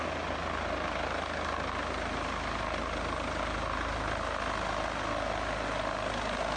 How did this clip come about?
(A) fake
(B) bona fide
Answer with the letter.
B